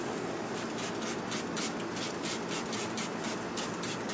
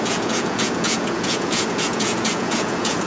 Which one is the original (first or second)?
first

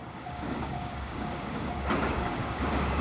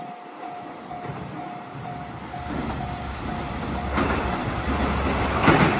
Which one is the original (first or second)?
second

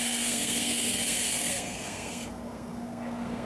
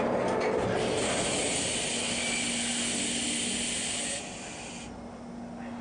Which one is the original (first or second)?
second